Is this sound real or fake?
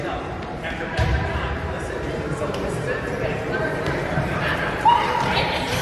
fake